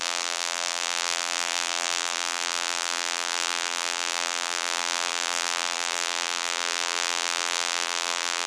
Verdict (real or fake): fake